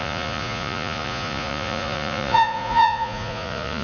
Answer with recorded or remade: remade